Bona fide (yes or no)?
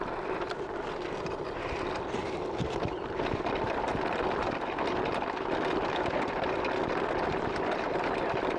yes